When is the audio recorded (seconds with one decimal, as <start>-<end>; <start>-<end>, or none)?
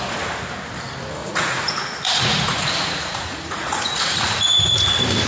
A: 0.0-1.2; 4.4-5.3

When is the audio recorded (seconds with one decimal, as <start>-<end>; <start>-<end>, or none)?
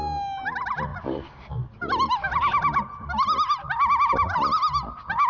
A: 0.0-5.3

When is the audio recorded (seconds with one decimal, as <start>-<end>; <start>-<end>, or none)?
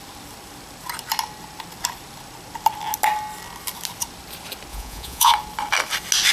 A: 0.0-4.7; 5.3-6.3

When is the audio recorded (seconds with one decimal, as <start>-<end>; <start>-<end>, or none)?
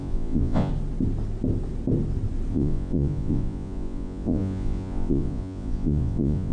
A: 0.7-2.5